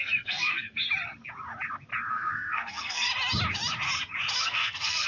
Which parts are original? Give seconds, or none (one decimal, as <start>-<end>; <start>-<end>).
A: 0.8-2.1; 3.1-4.4